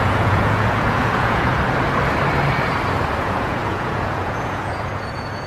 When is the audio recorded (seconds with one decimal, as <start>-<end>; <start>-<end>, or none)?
1.5-3.2

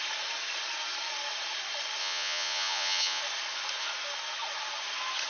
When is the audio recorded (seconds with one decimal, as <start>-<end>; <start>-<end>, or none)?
0.0-2.0; 3.2-5.3

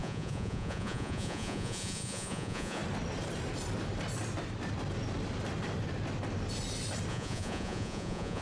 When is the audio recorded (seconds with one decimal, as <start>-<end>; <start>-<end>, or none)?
2.8-7.1